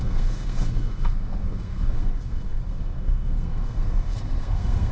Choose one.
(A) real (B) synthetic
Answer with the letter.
B